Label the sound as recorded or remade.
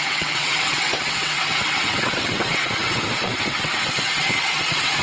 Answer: remade